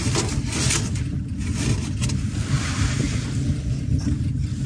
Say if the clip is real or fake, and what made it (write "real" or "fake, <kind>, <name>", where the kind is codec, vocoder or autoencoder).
real